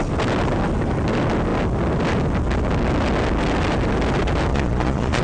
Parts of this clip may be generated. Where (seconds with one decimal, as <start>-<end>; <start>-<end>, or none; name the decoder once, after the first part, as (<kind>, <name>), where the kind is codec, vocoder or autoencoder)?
4.5-5.2 (vocoder, Vocos)